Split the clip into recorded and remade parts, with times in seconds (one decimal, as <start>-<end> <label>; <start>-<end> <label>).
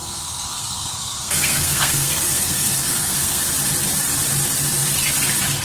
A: 0.0-3.4 remade; 3.4-5.6 recorded